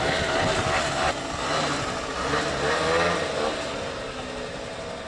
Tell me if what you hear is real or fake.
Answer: real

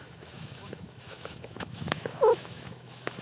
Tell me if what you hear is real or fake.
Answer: fake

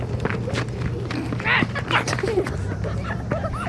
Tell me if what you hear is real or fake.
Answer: real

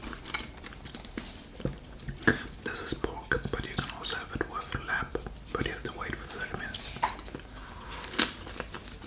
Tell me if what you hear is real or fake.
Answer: real